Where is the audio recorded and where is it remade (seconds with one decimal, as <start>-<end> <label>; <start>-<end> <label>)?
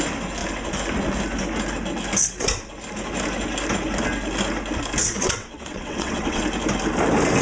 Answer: 0.0-5.0 recorded; 5.0-6.4 remade; 6.4-7.4 recorded